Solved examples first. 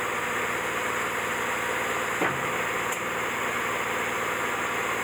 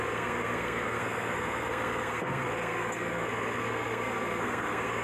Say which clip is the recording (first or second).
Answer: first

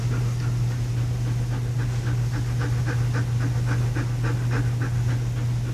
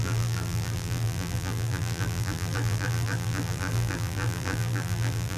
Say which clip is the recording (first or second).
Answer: first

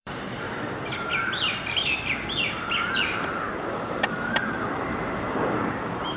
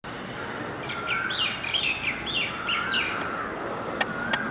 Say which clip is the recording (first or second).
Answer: second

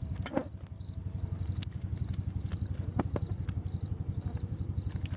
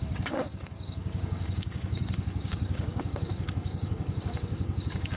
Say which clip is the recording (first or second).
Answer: first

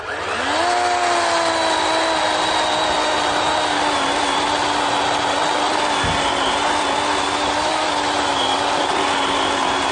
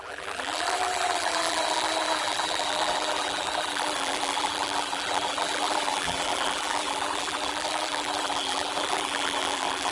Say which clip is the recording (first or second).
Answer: first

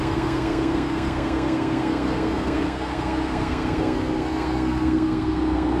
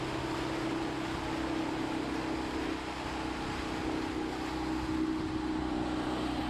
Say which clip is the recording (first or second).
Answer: second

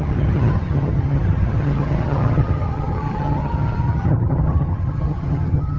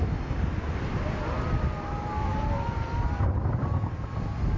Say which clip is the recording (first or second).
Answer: second